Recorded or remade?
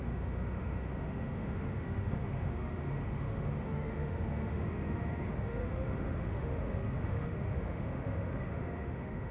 remade